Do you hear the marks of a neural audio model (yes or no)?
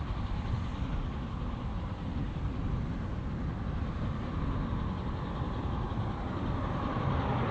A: no